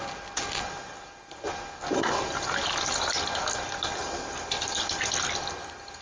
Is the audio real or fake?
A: real